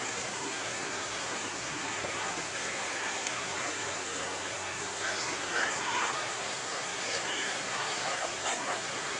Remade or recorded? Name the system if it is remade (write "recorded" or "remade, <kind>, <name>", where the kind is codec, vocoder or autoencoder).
remade, codec, SNAC